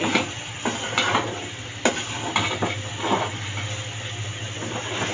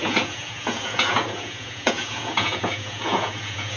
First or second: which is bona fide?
first